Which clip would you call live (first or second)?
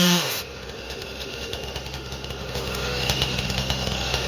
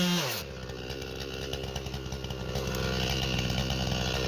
second